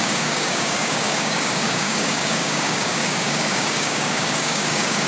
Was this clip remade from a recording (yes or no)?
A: yes